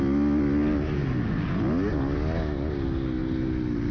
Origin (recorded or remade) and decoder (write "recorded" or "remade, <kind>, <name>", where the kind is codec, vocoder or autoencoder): recorded